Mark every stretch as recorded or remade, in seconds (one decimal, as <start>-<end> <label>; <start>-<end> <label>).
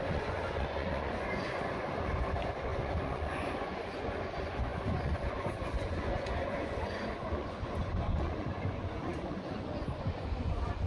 0.0-10.9 remade